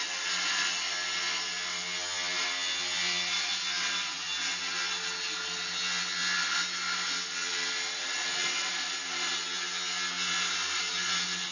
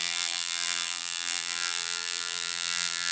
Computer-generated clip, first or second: second